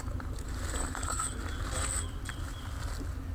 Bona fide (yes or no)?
yes